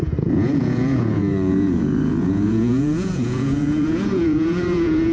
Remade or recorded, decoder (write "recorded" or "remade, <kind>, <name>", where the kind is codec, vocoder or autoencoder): remade, vocoder, Vocos